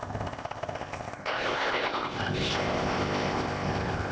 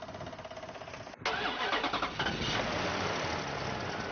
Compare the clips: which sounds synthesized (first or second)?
first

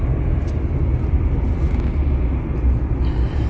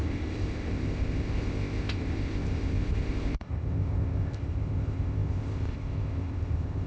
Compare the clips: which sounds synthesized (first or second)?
second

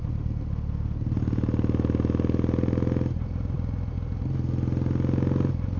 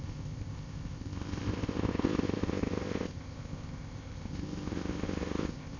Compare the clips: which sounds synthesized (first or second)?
second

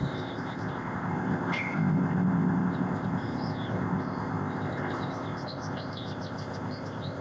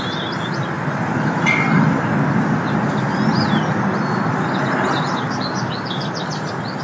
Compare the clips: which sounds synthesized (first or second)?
first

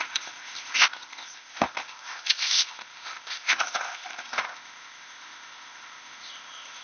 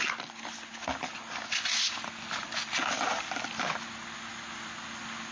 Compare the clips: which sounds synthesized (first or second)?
first